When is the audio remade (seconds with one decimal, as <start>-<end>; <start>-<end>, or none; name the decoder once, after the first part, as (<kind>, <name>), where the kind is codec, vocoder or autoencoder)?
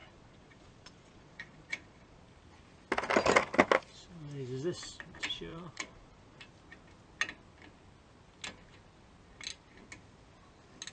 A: 0.0-2.2 (vocoder, Vocos); 5.5-6.5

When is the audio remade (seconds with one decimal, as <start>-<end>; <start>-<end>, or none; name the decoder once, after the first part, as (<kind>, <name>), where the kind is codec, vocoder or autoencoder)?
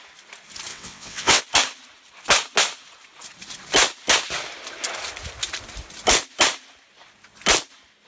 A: 0.7-1.4 (vocoder, WaveNeXt)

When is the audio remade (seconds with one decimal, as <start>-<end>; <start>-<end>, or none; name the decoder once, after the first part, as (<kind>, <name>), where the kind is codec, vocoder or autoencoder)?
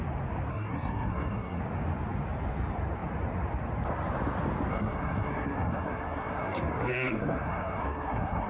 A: 0.5-1.6 (codec, SNAC); 4.7-8.5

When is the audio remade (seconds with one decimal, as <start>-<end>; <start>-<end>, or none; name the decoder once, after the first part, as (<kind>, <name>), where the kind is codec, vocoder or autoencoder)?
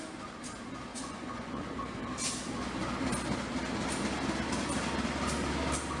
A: 0.9-1.7 (vocoder, Vocos)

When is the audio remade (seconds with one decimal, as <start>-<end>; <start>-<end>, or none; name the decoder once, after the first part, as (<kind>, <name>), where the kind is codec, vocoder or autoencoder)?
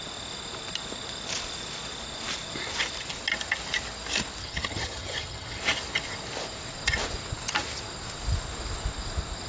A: 4.4-5.6 (vocoder, HiFi-GAN)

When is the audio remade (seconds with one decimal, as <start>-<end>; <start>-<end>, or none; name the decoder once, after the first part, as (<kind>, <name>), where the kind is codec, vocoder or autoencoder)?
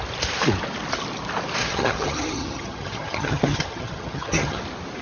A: 1.6-4.6 (vocoder, HiFi-GAN)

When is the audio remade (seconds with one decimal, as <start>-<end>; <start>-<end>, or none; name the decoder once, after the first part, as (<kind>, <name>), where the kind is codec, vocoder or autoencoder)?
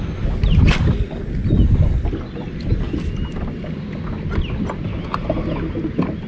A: none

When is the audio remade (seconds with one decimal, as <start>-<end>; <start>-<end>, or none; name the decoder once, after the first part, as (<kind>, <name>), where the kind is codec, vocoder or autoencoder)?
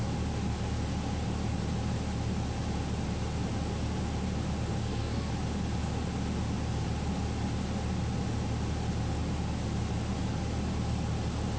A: 4.8-5.3 (codec, SNAC)